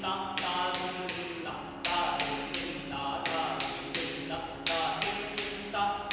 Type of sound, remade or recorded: recorded